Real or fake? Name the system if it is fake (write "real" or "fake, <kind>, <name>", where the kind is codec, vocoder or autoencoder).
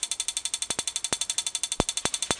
real